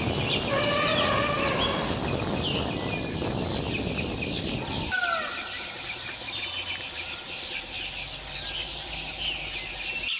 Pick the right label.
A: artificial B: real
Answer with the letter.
B